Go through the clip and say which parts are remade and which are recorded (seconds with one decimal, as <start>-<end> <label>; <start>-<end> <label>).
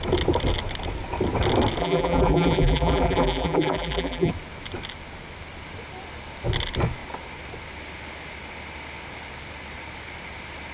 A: 0.0-1.8 recorded; 1.8-4.3 remade; 4.3-10.7 recorded